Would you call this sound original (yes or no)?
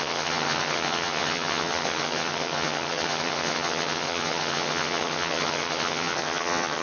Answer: no